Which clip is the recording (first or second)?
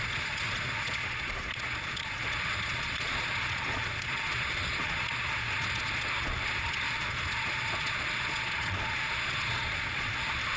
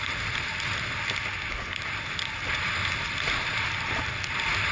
second